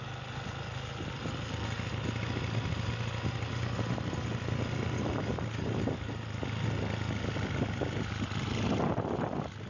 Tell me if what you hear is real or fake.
real